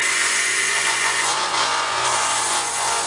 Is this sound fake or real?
fake